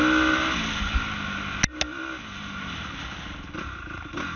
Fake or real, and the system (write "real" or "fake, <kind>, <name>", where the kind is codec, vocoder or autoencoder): real